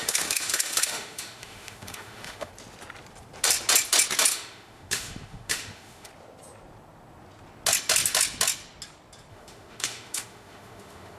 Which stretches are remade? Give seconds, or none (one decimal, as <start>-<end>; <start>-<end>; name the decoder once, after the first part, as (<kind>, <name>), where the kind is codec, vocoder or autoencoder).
0.0-2.5 (autoencoder, DAC-VAE); 4.3-6.1; 9.3-11.2